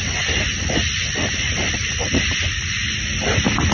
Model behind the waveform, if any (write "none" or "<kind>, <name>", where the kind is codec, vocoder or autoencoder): none